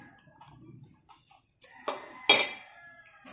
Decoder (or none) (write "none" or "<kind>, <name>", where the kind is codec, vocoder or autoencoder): none